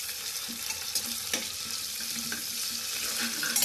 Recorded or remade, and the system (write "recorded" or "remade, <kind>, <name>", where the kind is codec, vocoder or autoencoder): recorded